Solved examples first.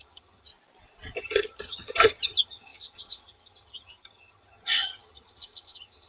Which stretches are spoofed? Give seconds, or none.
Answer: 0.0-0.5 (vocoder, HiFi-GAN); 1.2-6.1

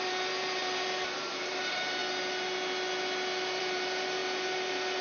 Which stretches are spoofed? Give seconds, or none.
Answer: 0.0-2.0 (vocoder, BigVGAN v2); 3.6-5.0

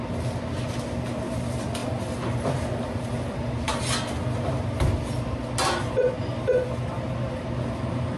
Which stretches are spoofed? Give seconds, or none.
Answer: none

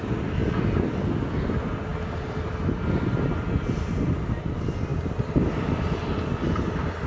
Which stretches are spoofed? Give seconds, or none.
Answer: none

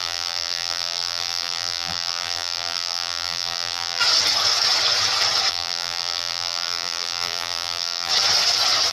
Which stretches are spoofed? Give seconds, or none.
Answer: 0.0-4.0 (vocoder, BigVGAN v2); 5.5-8.1

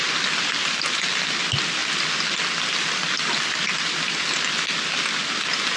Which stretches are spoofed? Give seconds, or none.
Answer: none